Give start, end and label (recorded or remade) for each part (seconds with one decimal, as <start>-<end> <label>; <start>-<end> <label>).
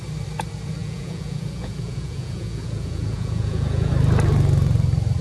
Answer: 0.0-0.8 recorded; 0.8-3.9 remade; 3.9-5.2 recorded